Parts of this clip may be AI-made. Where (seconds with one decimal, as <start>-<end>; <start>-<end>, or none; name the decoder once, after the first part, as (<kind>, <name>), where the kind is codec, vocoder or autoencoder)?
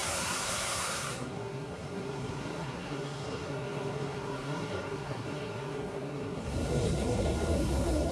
0.0-8.1 (codec, SNAC)